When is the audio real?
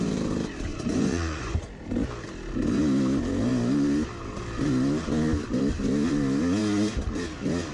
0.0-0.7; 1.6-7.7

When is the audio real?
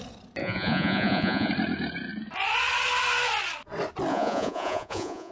0.0-0.4; 1.5-4.1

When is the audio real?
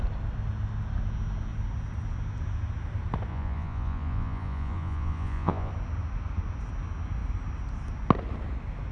0.0-3.3; 5.7-8.9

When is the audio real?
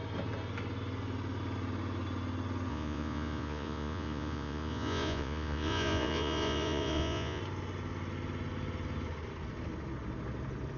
0.0-2.7; 7.4-10.8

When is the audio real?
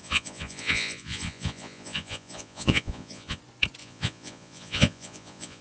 3.4-3.8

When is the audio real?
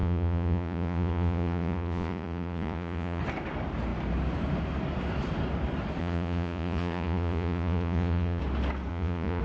3.2-6.0; 8.4-8.9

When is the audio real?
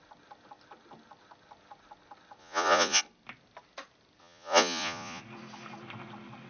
0.0-2.4; 3.0-4.2; 5.2-6.5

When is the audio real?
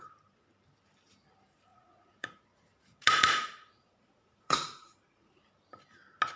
0.0-1.7; 5.5-6.4